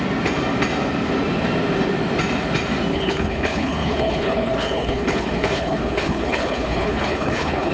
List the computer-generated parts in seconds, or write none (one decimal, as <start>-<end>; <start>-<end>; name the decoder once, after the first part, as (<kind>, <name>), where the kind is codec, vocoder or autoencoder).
2.9-7.7 (codec, HILCodec)